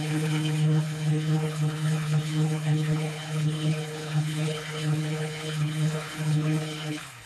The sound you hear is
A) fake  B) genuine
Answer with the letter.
A